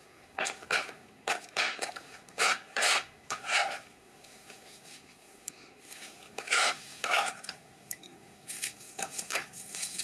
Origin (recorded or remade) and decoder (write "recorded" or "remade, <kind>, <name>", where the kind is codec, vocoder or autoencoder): remade, codec, SNAC